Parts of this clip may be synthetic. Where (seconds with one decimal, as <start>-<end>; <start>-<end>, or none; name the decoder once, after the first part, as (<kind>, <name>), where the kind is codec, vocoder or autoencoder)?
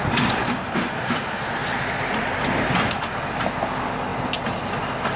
none